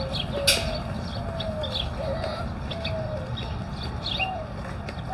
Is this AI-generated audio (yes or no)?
no